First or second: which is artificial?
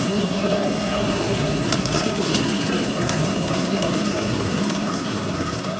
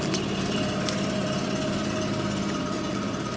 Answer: first